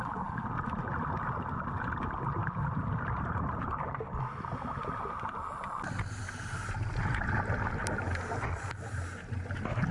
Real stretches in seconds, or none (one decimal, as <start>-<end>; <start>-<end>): 0.0-2.4; 3.7-9.9